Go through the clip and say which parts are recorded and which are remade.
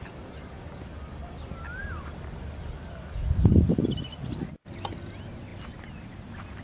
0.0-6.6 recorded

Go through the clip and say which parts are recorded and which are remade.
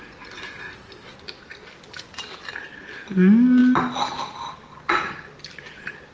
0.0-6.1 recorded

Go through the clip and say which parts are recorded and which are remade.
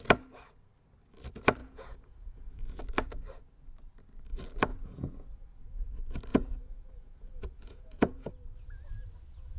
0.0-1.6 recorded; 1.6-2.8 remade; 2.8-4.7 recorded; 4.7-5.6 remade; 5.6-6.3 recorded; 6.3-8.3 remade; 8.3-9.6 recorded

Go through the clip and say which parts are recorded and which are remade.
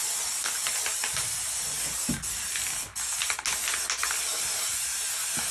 0.0-5.5 recorded